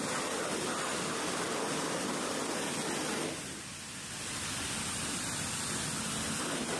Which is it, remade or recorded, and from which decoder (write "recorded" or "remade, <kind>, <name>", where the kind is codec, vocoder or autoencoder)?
recorded